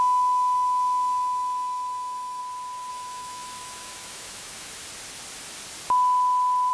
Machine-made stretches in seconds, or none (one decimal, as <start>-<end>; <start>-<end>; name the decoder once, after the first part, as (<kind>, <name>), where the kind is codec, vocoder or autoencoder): 0.0-2.4 (autoencoder, DAC-VAE); 2.9-4.8